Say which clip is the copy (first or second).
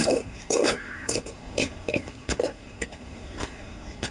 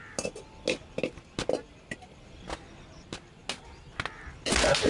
first